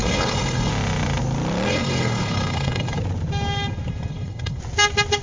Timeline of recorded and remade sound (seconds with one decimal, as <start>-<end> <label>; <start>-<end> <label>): 0.0-0.7 remade; 0.7-1.7 recorded; 1.7-3.0 remade; 3.0-4.1 recorded; 4.1-4.6 remade; 4.6-5.2 recorded